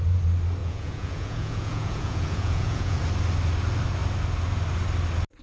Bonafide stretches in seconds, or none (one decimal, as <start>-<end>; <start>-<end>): 0.0-0.6; 3.0-5.4